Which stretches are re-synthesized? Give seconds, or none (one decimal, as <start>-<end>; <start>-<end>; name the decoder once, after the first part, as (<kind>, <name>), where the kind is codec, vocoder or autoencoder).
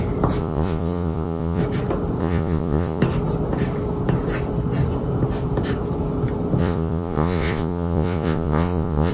0.4-1.6 (vocoder, Vocos); 2.2-3.0; 6.6-9.1